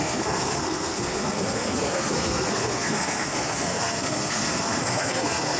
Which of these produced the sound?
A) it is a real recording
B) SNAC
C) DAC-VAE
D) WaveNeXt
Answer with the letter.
B